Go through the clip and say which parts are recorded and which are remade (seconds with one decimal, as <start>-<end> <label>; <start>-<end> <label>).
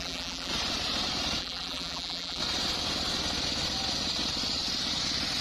0.0-0.5 remade; 0.5-1.4 recorded; 1.4-2.4 remade; 2.4-5.4 recorded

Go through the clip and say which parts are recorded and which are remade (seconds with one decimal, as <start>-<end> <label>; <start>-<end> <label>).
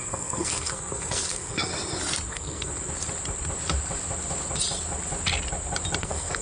0.0-1.7 remade; 1.7-2.3 recorded; 2.3-2.7 remade; 2.7-6.0 recorded; 6.0-6.4 remade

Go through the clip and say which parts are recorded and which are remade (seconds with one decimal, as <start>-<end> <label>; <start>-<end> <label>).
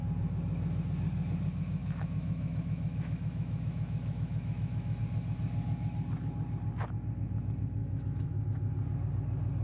0.0-1.8 recorded; 1.8-5.0 remade; 5.0-7.8 recorded; 7.8-8.4 remade; 8.4-9.6 recorded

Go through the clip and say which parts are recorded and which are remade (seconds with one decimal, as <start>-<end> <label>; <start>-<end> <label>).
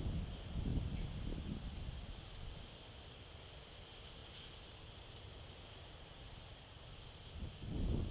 0.0-8.1 recorded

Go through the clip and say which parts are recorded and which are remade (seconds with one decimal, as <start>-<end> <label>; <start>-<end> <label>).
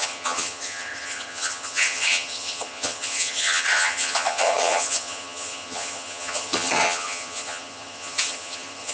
0.0-8.9 remade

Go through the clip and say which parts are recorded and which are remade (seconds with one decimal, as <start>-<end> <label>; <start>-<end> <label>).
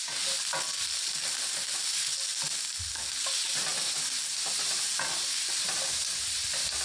0.0-6.8 recorded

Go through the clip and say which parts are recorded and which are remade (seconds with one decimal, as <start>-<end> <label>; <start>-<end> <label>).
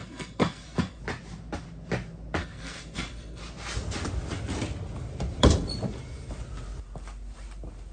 0.0-1.0 remade; 1.0-2.4 recorded; 2.4-3.4 remade; 3.4-7.9 recorded